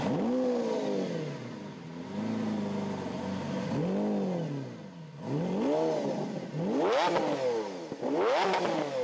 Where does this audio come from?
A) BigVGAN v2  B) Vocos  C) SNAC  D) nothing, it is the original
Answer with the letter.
D